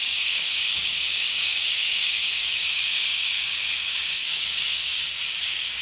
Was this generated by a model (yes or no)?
yes